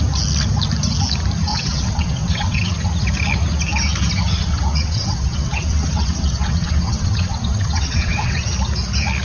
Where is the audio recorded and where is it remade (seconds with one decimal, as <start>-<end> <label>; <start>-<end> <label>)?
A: 0.0-1.5 recorded; 1.5-2.9 remade; 2.9-4.4 recorded; 4.4-8.4 remade; 8.4-9.2 recorded